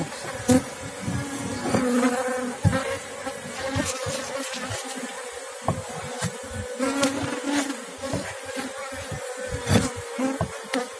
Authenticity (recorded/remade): recorded